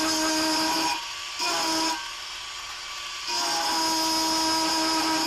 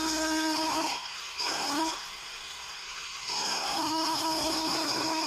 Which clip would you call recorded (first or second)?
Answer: first